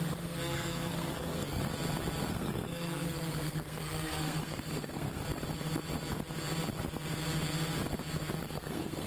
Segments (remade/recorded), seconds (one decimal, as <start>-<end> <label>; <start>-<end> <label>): 0.0-1.6 remade; 1.6-2.3 recorded; 2.3-5.2 remade; 5.2-8.4 recorded; 8.4-9.1 remade